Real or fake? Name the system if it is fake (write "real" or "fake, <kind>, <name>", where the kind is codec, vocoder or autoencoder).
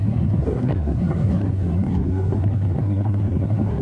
fake, codec, SNAC